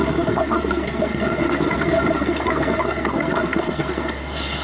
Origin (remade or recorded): remade